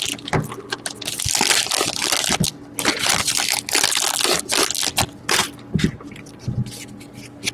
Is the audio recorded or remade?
recorded